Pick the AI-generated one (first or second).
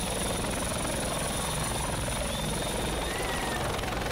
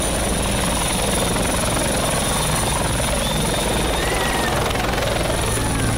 first